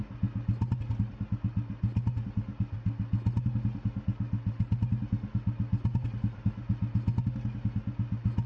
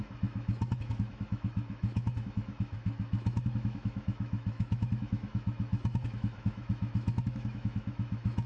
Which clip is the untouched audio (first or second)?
first